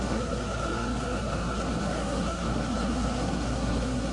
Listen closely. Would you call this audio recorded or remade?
remade